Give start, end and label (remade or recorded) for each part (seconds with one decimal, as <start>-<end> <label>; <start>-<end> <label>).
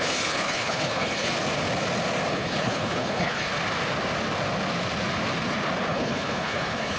0.0-1.3 remade; 1.3-2.3 recorded; 2.3-3.5 remade; 3.5-5.9 recorded; 5.9-7.0 remade